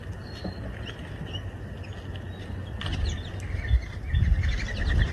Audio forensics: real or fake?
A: real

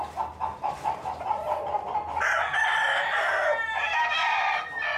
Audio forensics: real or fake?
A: real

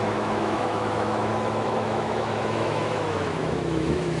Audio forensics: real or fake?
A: fake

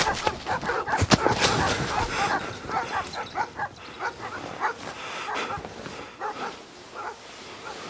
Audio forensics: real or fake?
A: real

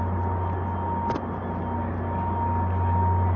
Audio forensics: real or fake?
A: real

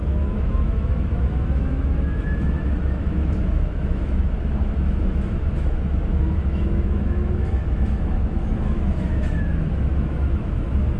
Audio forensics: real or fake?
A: fake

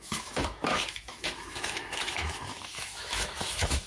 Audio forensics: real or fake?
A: fake